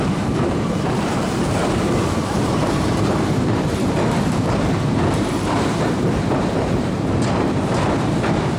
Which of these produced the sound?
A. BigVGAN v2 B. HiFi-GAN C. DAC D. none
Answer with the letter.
A